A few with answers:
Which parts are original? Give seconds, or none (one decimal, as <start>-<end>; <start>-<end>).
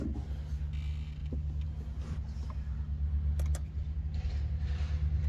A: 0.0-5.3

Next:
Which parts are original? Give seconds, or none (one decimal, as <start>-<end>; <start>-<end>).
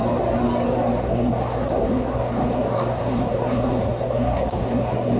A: 0.0-1.0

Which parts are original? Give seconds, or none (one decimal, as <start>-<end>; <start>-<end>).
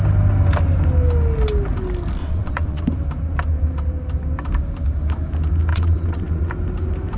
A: 0.0-2.2; 2.8-5.7; 6.5-7.2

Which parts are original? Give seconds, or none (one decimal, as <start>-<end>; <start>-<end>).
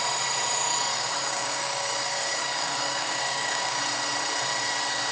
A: 0.0-0.9; 3.8-5.1